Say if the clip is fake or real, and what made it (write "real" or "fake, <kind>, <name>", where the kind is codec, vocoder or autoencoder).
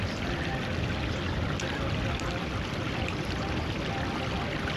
real